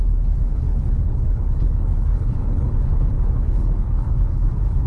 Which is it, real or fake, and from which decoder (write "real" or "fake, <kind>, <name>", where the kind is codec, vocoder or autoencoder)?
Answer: fake, codec, HILCodec